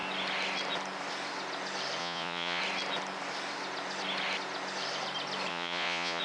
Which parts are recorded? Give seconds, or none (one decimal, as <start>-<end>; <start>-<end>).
0.0-2.0; 2.6-5.5